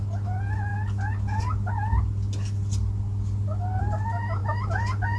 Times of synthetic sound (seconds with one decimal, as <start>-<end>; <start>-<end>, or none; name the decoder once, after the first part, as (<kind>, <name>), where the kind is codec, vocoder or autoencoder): none